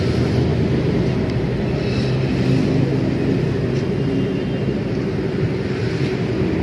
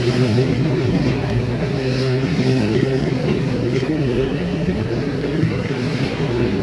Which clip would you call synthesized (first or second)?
second